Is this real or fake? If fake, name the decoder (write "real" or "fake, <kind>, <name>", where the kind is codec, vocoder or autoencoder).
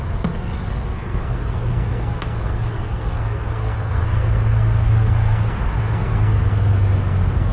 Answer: fake, codec, SNAC